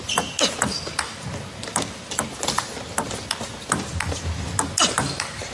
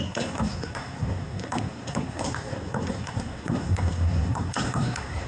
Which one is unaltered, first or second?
first